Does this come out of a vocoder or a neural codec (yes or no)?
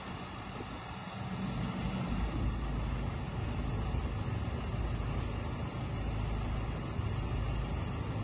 no